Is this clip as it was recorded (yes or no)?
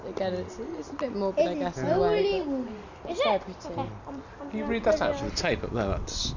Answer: yes